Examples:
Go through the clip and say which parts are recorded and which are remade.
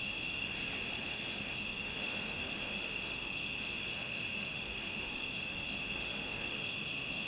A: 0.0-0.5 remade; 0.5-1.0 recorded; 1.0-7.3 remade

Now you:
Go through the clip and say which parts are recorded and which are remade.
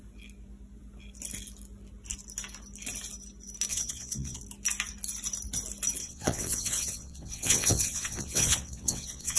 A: 0.0-3.7 recorded; 3.7-4.4 remade; 4.4-6.0 recorded; 6.0-9.4 remade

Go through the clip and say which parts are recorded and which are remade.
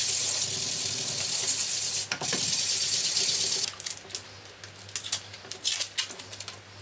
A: 0.0-6.8 recorded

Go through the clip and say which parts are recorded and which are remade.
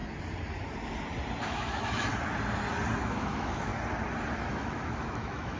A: 0.0-1.4 recorded; 1.4-2.1 remade; 2.1-3.0 recorded; 3.0-3.7 remade; 3.7-4.5 recorded; 4.5-5.6 remade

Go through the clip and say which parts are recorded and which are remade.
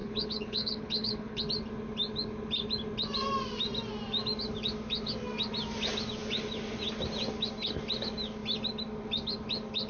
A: 0.0-1.4 remade; 1.4-9.9 recorded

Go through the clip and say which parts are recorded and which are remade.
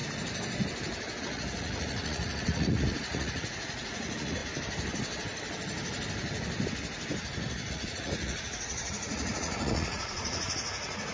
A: 0.0-1.2 recorded; 1.2-4.4 remade; 4.4-7.7 recorded; 7.7-11.1 remade